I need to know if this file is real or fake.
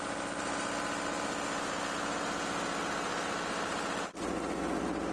real